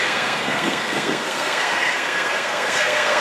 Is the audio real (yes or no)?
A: no